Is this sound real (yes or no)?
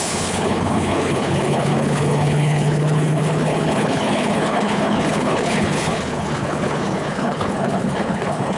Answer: no